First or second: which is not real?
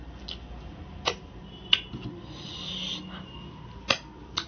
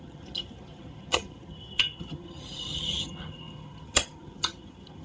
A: second